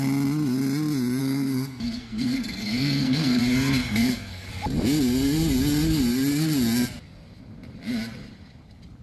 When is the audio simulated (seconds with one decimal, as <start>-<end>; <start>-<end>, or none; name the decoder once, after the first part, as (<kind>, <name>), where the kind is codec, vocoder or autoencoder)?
1.2-3.4 (codec, SNAC); 3.8-4.5